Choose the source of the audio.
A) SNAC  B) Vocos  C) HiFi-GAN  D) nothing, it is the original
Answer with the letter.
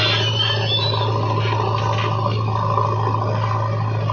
D